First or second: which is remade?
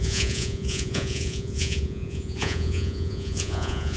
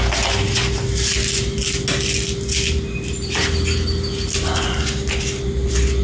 first